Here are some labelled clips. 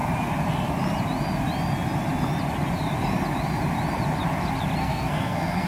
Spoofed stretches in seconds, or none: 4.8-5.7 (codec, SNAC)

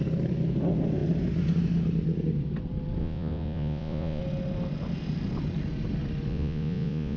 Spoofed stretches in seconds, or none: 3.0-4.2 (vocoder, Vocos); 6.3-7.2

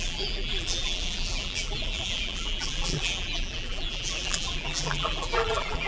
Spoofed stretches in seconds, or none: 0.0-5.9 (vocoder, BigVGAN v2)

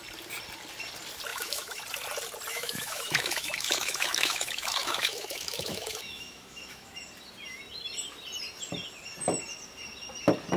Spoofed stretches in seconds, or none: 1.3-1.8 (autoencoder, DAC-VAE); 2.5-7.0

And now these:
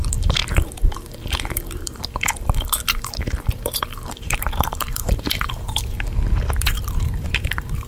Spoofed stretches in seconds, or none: 0.0-7.9 (vocoder, BigVGAN v2)

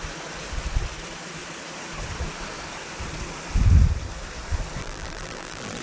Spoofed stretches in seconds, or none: 4.8-5.8 (vocoder, BigVGAN v2)

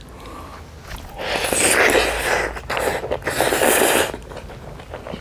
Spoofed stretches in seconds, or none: none

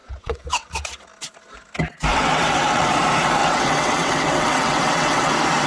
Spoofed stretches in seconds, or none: 0.0-0.7 (vocoder, WaveNeXt); 2.1-2.9; 3.4-5.3